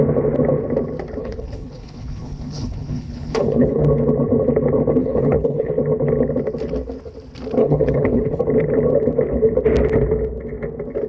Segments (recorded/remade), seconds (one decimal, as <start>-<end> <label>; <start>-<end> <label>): 0.0-1.2 recorded; 1.2-3.8 remade; 3.8-5.0 recorded; 5.0-5.7 remade; 5.7-7.6 recorded; 7.6-8.4 remade; 8.4-11.1 recorded